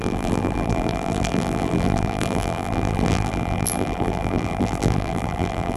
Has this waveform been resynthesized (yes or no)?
yes